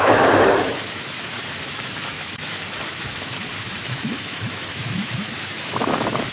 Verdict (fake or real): fake